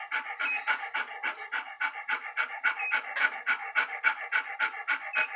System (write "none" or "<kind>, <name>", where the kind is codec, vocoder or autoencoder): none